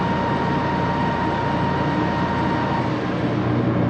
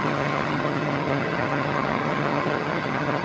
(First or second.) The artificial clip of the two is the second